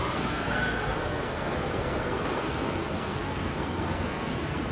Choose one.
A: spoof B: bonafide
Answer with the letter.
A